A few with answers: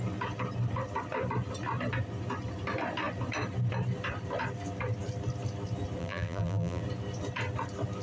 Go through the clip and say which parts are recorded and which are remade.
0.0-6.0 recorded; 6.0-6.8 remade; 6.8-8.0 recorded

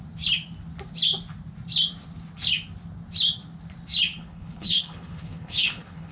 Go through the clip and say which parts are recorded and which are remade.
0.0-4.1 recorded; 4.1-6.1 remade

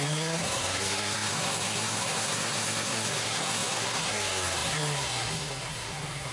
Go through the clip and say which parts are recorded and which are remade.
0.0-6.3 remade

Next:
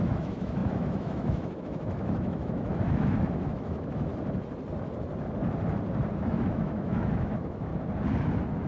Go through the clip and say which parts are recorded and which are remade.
0.0-4.1 remade; 4.1-6.1 recorded; 6.1-7.7 remade; 7.7-8.7 recorded

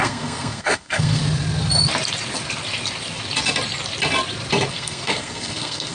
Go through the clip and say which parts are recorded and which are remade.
0.0-1.2 remade; 1.2-4.7 recorded; 4.7-5.9 remade

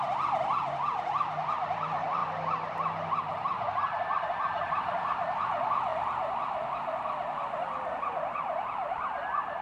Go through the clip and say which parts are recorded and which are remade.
0.0-2.2 remade; 2.2-4.2 recorded; 4.2-5.9 remade; 5.9-8.0 recorded; 8.0-9.6 remade

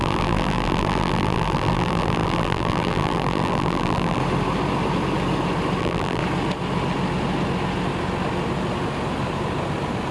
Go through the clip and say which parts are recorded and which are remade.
0.0-4.2 remade; 4.2-5.8 recorded; 5.8-6.2 remade; 6.2-10.1 recorded

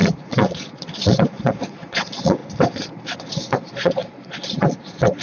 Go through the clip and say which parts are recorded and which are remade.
0.0-2.4 remade; 2.4-3.3 recorded; 3.3-5.2 remade